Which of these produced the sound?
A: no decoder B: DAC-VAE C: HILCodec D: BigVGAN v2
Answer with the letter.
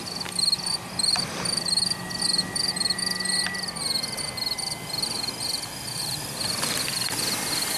A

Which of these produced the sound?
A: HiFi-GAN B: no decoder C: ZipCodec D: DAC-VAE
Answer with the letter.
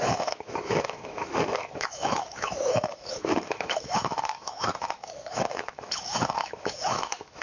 D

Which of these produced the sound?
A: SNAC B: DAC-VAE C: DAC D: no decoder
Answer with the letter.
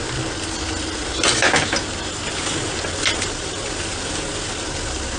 D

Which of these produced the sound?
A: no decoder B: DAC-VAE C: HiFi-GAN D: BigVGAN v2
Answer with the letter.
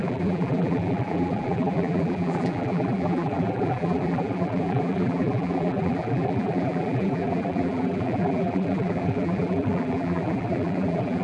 D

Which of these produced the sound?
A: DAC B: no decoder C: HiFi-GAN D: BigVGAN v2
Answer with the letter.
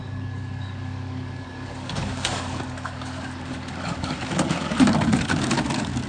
A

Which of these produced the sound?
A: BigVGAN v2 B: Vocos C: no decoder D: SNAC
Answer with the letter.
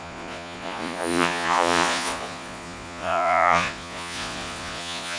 B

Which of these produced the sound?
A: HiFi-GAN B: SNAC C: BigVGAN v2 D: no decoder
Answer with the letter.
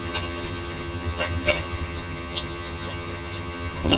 A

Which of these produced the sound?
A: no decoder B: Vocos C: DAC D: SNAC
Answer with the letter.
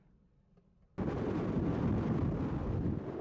A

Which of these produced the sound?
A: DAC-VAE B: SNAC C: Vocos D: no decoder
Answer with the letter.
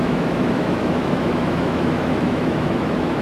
A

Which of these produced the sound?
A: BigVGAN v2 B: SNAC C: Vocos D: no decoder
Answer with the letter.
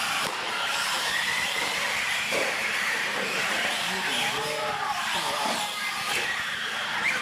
A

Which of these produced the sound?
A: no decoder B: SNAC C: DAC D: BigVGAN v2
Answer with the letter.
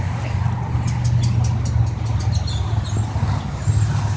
A